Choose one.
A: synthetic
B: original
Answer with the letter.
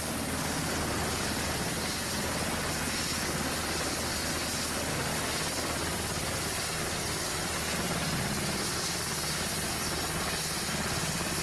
B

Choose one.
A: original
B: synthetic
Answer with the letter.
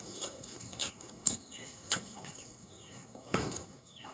B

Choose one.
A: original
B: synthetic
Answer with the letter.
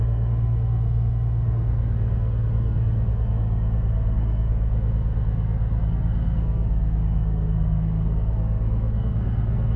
B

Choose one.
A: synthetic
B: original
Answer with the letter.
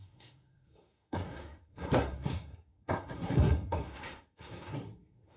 A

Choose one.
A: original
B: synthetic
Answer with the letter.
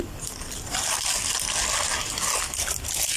A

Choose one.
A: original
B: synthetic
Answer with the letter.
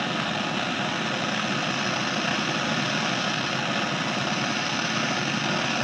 A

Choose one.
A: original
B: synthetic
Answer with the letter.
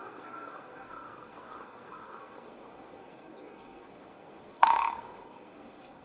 B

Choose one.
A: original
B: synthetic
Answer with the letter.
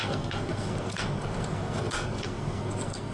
B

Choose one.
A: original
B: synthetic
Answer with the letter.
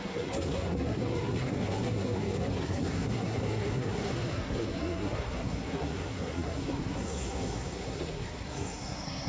B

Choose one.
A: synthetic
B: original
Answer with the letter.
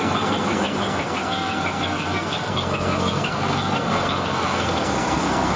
A